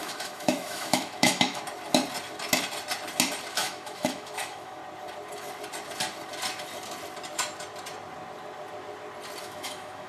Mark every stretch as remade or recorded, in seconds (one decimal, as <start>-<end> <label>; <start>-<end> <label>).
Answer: 0.0-1.6 remade; 1.6-3.5 recorded; 3.5-4.8 remade; 4.8-9.4 recorded; 9.4-10.1 remade